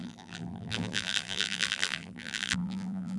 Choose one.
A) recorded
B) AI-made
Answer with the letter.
B